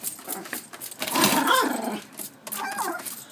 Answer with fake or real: real